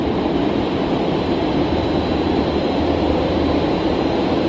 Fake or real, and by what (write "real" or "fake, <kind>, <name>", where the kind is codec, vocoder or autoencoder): fake, vocoder, BigVGAN v2